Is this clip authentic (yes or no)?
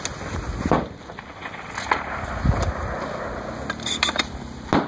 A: yes